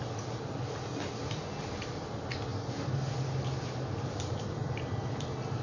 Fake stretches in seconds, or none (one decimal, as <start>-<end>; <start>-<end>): 2.5-4.4

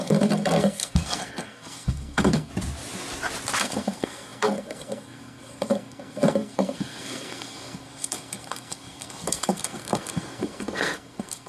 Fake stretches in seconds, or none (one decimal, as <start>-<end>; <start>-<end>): 0.0-2.5; 3.6-11.5